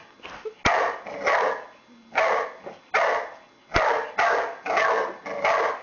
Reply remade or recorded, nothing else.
recorded